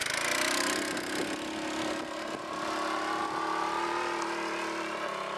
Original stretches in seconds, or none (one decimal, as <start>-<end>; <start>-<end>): 0.0-5.4